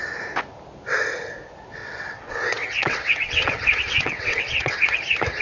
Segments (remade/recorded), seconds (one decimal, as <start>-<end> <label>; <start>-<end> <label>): 0.0-1.8 recorded; 1.8-4.7 remade; 4.7-5.4 recorded